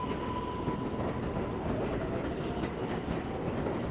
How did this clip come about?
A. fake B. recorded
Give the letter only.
B